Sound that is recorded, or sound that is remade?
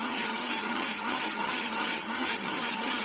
remade